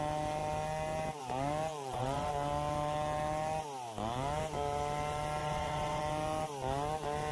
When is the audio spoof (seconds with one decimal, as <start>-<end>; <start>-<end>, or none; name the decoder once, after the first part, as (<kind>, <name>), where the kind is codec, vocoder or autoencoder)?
1.7-2.3 (vocoder, WaveNeXt); 5.4-6.0